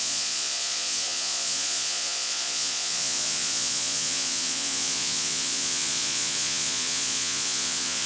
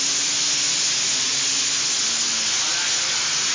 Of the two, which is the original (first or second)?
second